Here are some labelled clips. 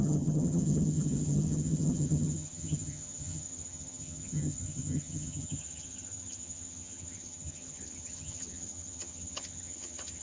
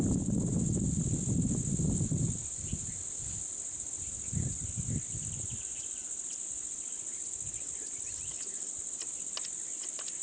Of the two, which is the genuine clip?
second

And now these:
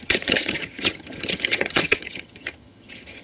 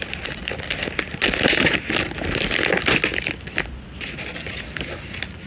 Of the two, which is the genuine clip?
second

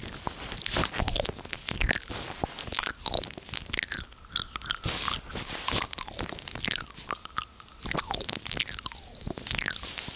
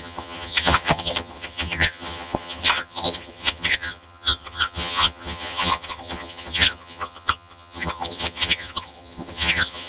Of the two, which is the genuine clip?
first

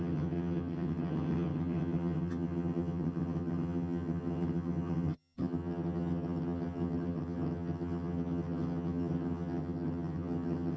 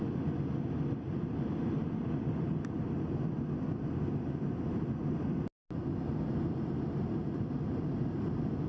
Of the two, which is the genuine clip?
second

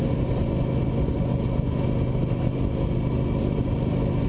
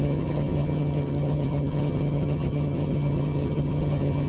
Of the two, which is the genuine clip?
first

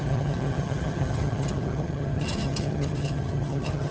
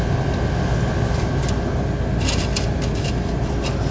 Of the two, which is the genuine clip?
second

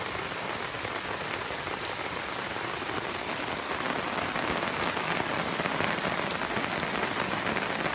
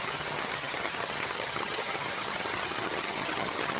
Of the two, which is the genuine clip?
first